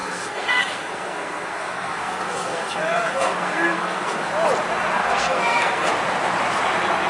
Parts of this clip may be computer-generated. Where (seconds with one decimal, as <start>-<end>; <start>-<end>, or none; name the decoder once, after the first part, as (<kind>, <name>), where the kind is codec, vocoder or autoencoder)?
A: 0.0-4.3 (codec, SNAC); 5.0-5.9